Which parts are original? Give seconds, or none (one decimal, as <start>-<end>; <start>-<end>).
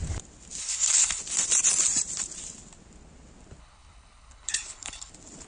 0.0-0.6; 1.2-3.6; 5.1-5.5